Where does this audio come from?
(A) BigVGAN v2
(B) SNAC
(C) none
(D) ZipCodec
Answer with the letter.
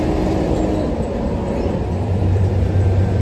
A